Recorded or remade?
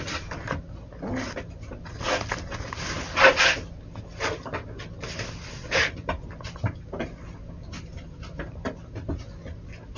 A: recorded